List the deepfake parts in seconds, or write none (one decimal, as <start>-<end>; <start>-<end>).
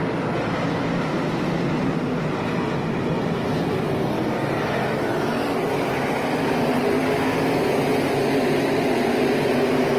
1.8-7.0